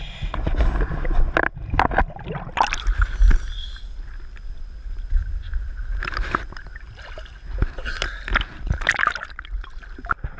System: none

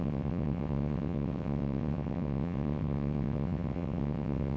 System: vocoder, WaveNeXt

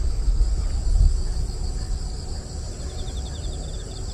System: none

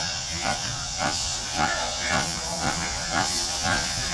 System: vocoder, Vocos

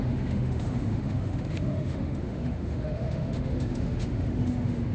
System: autoencoder, DAC-VAE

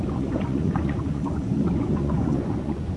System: vocoder, Vocos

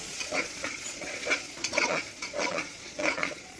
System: vocoder, Vocos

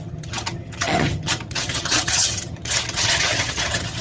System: vocoder, HiFi-GAN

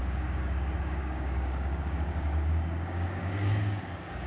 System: codec, DAC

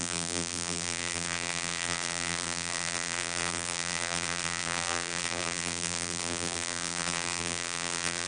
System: vocoder, BigVGAN v2